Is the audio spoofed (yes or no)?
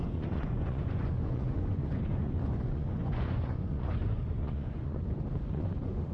yes